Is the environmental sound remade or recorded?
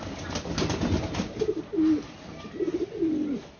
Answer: recorded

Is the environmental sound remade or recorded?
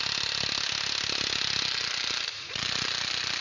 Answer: recorded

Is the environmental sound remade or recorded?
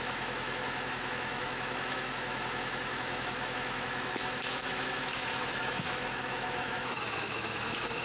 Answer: remade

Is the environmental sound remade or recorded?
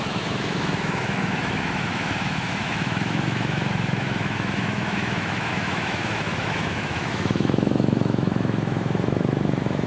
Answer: remade